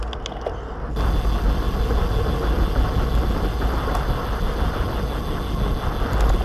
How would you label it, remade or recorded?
recorded